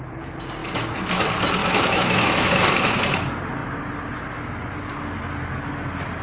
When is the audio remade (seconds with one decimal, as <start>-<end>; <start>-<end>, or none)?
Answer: 1.6-2.5